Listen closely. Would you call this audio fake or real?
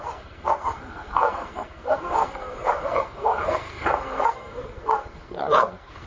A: fake